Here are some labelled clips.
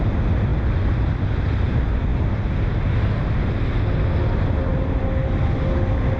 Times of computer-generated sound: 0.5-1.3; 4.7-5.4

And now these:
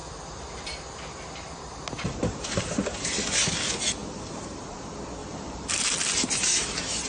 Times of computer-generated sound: 2.2-2.7; 4.0-4.8; 5.2-5.9